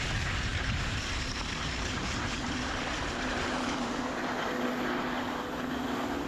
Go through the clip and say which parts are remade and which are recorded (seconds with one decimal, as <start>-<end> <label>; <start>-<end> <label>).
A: 0.0-0.5 recorded; 0.5-4.2 remade; 4.2-6.3 recorded